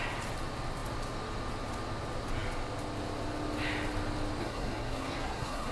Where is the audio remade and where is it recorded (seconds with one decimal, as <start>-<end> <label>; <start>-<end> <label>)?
0.0-4.4 recorded; 4.4-5.7 remade